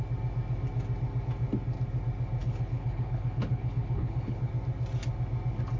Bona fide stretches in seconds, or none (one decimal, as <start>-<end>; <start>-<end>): 0.0-2.4; 4.5-5.8